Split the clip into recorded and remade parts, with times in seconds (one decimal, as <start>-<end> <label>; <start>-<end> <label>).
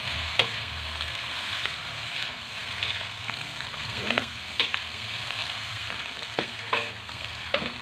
0.0-7.8 remade